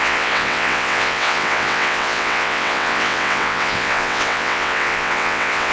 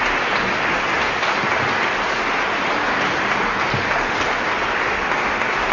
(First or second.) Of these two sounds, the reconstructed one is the first